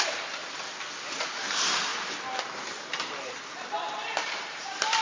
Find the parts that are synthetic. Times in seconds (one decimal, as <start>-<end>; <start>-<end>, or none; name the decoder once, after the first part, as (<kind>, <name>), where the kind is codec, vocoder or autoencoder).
0.0-0.4 (vocoder, BigVGAN v2); 1.2-5.0